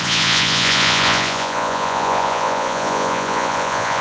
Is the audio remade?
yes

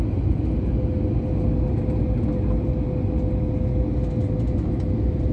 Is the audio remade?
no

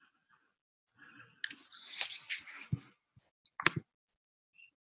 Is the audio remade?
no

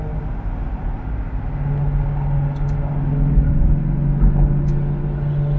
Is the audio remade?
no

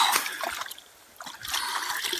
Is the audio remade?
no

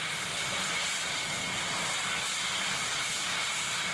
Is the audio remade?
no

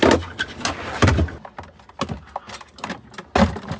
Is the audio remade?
no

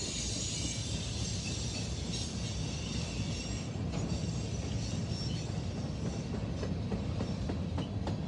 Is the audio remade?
no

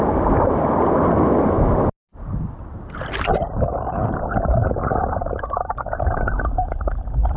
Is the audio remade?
no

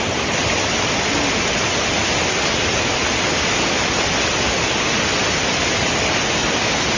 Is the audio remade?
no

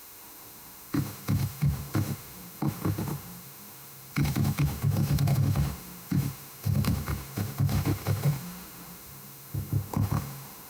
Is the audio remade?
yes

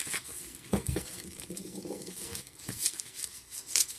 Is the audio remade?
yes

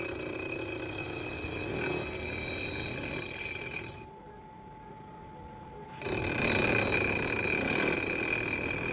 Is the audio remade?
no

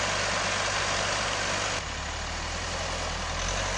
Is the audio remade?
no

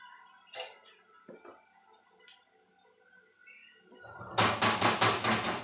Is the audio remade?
no